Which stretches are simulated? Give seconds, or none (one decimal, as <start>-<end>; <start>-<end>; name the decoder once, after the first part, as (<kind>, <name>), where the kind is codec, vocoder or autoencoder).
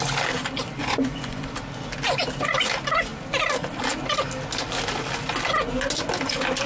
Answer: 0.8-1.5 (vocoder, Vocos)